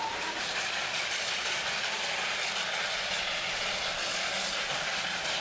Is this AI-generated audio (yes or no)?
no